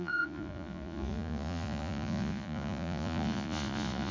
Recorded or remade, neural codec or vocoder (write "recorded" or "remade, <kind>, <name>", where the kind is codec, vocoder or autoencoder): remade, vocoder, Vocos